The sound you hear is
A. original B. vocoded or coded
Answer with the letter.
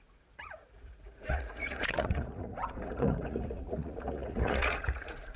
B